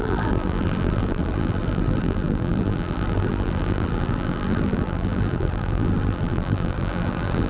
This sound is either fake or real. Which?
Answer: fake